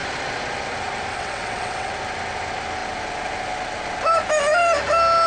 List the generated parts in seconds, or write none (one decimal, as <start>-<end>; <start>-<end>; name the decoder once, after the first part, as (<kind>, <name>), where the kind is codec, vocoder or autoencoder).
1.1-1.9 (vocoder, WaveNeXt)